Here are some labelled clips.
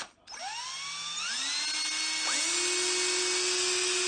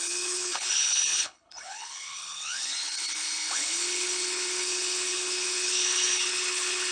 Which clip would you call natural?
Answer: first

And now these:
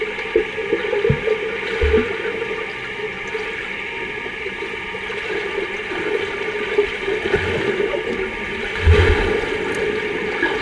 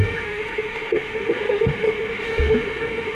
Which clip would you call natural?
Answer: first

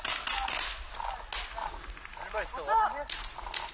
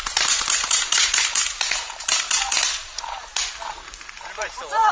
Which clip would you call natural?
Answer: first